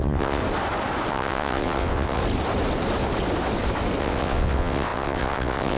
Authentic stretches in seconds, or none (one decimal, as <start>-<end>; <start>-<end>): 0.4-1.1; 2.2-4.0